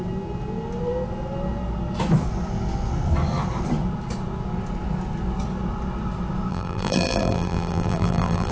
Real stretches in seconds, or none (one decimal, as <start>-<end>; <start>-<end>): 0.0-6.5